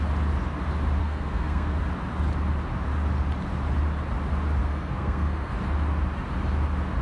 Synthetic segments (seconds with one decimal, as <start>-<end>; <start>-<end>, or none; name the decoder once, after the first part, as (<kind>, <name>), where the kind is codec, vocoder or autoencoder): 1.0-1.8 (codec, SNAC); 4.6-5.5